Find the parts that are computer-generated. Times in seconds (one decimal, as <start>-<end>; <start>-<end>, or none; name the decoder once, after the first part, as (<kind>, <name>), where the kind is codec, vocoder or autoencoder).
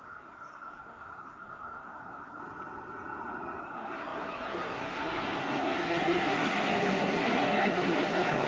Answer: 0.0-2.4 (codec, SNAC); 3.6-8.5